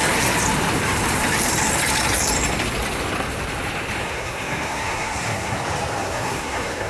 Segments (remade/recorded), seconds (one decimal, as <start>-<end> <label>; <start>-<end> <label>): 0.0-4.0 recorded; 4.0-5.6 remade; 5.6-6.0 recorded; 6.0-6.9 remade